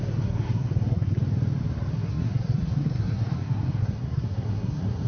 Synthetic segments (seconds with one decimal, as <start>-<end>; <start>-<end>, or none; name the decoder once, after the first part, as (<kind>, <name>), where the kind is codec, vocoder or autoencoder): 0.0-1.2 (codec, SNAC); 1.9-5.1